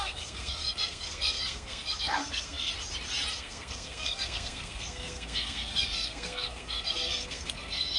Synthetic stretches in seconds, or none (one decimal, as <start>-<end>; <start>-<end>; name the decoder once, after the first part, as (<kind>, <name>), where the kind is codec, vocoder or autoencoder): 0.0-2.7 (codec, SNAC); 3.3-8.0